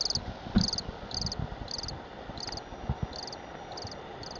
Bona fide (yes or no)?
yes